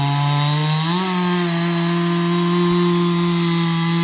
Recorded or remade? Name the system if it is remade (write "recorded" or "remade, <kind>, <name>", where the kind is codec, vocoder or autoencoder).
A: recorded